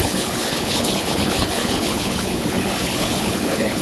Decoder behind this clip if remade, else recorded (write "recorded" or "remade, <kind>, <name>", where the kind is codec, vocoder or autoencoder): remade, codec, HILCodec